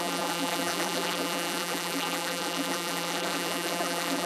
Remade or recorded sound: remade